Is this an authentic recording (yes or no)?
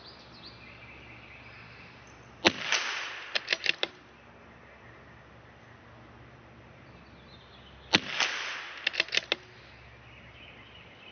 yes